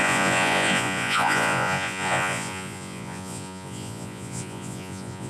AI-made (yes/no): yes